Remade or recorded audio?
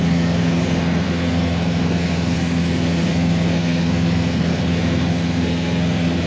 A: remade